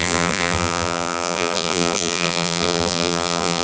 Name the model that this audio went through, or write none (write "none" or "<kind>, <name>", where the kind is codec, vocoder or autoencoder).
vocoder, BigVGAN v2